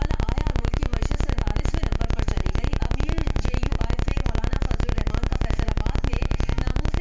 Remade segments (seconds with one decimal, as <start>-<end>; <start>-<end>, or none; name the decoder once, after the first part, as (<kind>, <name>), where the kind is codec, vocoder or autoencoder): none